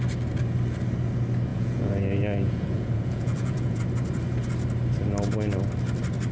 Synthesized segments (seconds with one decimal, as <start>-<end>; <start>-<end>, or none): 1.5-3.8